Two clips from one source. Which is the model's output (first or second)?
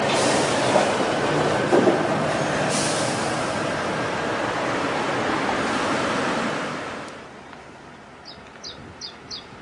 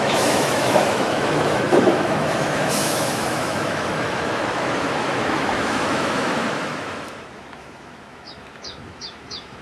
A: second